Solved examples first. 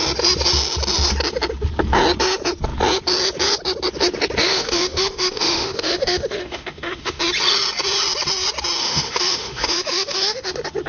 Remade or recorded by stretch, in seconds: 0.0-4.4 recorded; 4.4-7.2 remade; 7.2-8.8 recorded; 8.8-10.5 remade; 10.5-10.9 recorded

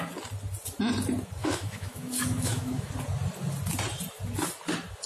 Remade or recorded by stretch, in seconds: 0.0-1.4 recorded; 1.4-2.9 remade; 2.9-5.1 recorded

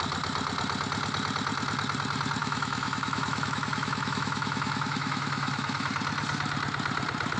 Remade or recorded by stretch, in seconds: 0.0-2.4 recorded; 2.4-5.9 remade; 5.9-7.4 recorded

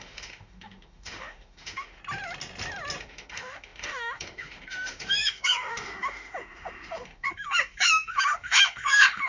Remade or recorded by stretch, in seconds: 0.0-2.0 remade; 2.0-3.0 recorded; 3.0-9.3 remade

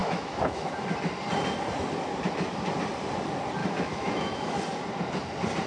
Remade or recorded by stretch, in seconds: 0.0-0.7 remade; 0.7-3.6 recorded; 3.6-4.6 remade; 4.6-5.7 recorded

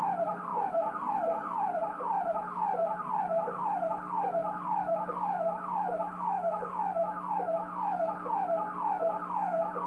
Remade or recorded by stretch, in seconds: 0.0-4.4 recorded; 4.4-8.3 remade; 8.3-9.9 recorded